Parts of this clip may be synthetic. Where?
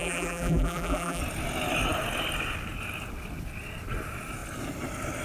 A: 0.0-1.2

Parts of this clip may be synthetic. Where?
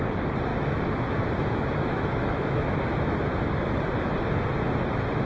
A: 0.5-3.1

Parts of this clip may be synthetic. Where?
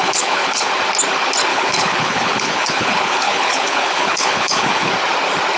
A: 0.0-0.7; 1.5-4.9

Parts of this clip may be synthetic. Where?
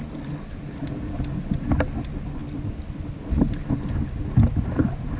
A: none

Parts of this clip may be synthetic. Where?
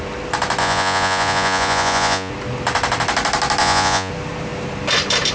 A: 0.6-2.3; 3.6-4.1